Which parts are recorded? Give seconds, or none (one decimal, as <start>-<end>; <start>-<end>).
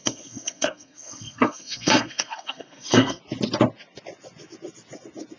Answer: 3.2-5.4